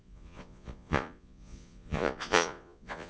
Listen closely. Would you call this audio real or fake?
fake